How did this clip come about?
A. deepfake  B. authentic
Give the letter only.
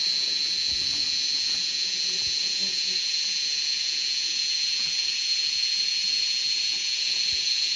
A